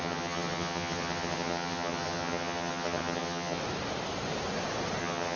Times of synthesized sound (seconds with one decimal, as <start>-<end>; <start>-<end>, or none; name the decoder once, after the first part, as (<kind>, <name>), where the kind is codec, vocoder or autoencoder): 0.0-3.6 (vocoder, HiFi-GAN); 5.0-5.4